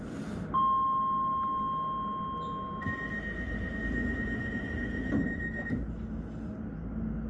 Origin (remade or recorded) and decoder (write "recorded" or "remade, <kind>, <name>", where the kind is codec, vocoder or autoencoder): recorded